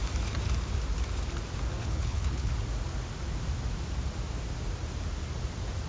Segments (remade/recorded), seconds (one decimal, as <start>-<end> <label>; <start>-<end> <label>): 0.0-1.8 recorded; 1.8-2.5 remade; 2.5-5.9 recorded